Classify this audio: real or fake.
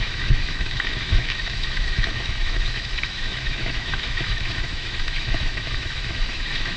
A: fake